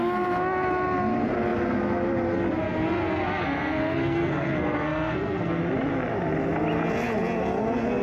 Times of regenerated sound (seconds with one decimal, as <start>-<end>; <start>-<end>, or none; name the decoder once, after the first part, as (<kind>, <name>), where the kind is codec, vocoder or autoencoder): 3.4-5.6 (codec, SNAC)